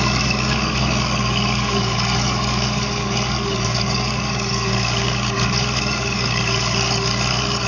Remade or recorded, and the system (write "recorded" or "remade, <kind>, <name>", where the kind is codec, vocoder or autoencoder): remade, codec, DAC